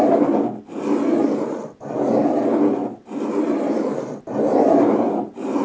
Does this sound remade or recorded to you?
recorded